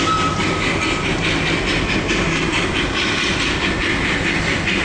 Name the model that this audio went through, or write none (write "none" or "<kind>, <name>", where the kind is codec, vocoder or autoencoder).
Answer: none